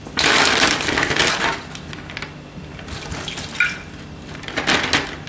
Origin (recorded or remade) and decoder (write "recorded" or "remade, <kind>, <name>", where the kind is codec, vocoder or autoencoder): recorded